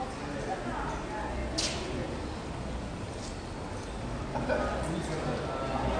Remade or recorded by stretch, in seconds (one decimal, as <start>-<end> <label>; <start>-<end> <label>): 0.0-6.0 recorded